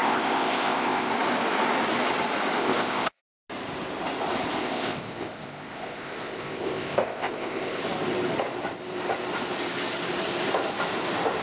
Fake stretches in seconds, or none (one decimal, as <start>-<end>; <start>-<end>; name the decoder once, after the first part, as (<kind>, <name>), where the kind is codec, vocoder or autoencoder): 0.0-1.1 (codec, ZipCodec); 2.6-3.2; 4.6-7.8